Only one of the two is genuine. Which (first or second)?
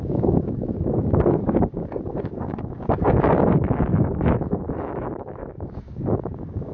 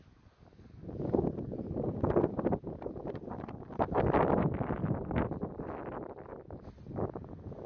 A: second